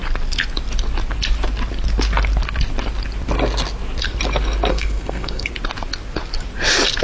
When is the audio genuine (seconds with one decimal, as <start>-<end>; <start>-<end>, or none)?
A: 0.0-4.7; 5.5-7.0